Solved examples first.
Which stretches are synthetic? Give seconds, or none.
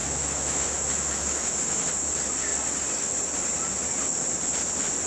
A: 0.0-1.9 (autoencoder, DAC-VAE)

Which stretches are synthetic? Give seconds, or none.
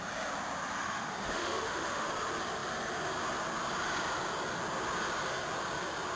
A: 0.8-2.1 (autoencoder, DAC-VAE)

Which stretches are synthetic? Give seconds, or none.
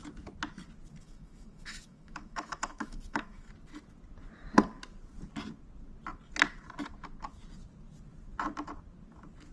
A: 1.0-3.5 (autoencoder, DAC-VAE)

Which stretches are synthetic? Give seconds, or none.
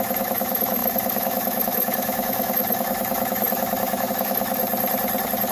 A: 0.0-4.6 (autoencoder, DAC-VAE)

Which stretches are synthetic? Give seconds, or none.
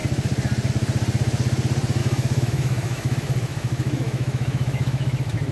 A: 2.0-5.5 (autoencoder, DAC-VAE)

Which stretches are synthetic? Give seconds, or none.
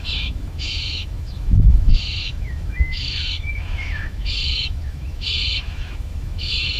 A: 0.0-6.8 (autoencoder, DAC-VAE)